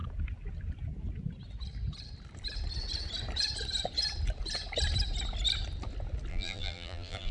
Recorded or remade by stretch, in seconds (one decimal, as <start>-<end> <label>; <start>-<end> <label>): 0.0-6.3 recorded; 6.3-7.3 remade